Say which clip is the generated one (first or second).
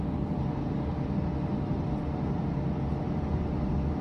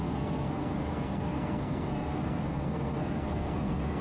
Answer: second